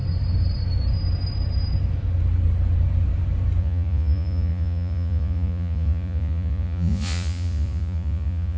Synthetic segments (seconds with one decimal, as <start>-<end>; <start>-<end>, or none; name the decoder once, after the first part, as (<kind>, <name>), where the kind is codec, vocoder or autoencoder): 3.6-8.6 (vocoder, Vocos)